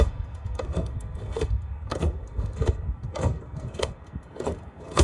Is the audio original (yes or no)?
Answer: no